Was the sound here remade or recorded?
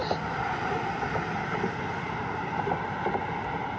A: recorded